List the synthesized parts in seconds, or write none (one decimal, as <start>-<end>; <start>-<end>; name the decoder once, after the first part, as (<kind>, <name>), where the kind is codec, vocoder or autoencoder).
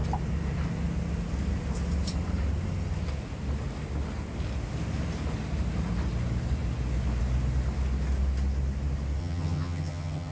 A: 9.2-10.3 (vocoder, HiFi-GAN)